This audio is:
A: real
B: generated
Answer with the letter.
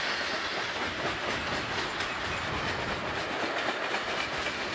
A